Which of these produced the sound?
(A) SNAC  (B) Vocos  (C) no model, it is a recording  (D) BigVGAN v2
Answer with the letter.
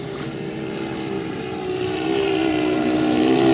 D